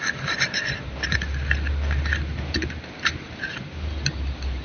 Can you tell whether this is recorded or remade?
remade